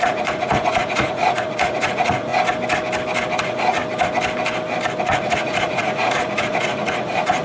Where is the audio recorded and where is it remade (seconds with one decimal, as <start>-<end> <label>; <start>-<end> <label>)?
0.0-2.3 remade; 2.3-3.4 recorded; 3.4-3.8 remade; 3.8-5.0 recorded; 5.0-7.4 remade